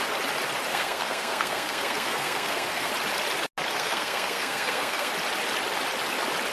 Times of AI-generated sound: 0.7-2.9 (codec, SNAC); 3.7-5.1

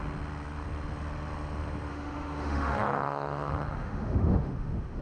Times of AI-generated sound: 1.9-5.0 (autoencoder, DAC-VAE)

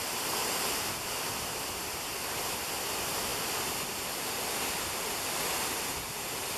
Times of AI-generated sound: 0.0-0.4 (vocoder, BigVGAN v2); 1.2-6.6